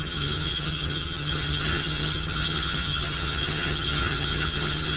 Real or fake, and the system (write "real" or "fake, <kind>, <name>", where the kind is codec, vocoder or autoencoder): fake, vocoder, HiFi-GAN